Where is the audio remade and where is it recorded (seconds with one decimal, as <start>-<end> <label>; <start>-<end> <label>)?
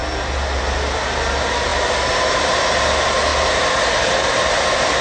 0.0-5.0 recorded